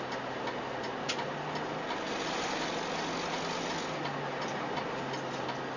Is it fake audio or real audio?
real